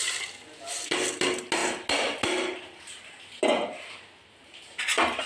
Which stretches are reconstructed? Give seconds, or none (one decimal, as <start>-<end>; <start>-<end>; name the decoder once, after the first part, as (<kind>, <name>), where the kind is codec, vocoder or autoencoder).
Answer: none